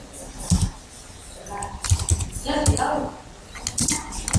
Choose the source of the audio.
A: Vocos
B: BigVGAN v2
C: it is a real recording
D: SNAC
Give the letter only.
C